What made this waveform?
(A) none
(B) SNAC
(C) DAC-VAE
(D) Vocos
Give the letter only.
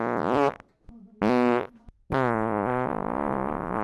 A